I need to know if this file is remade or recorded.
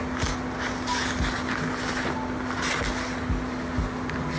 recorded